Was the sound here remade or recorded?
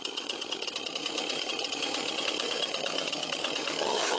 remade